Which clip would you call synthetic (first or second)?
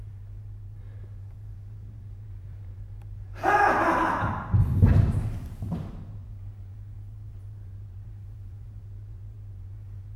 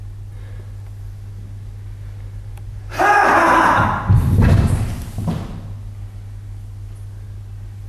first